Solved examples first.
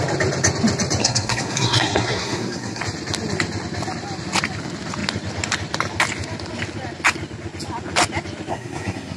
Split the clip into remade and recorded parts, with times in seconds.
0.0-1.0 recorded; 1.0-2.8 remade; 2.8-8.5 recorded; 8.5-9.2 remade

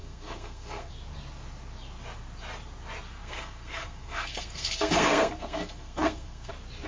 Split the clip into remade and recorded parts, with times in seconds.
0.0-0.9 remade; 0.9-3.2 recorded; 3.2-6.5 remade; 6.5-6.9 recorded

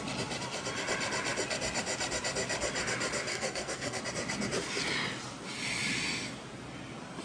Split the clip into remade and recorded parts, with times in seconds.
0.0-3.3 recorded; 3.3-4.0 remade; 4.0-7.2 recorded

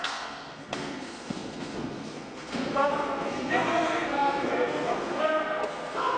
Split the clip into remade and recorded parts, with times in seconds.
0.0-6.2 remade

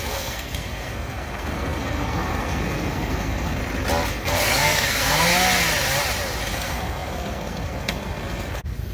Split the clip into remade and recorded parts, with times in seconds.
0.0-3.6 remade; 3.6-4.1 recorded; 4.1-5.3 remade; 5.3-6.5 recorded; 6.5-8.9 remade